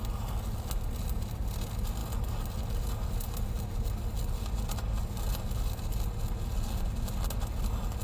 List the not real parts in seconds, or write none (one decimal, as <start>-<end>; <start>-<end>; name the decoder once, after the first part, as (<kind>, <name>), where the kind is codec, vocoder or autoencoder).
none